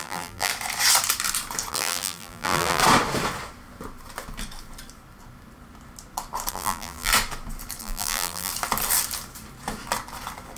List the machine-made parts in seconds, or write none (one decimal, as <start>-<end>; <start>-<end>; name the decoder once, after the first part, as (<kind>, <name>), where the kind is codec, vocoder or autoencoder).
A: 0.0-0.5 (vocoder, BigVGAN v2); 1.7-2.8; 6.5-7.1; 7.8-8.5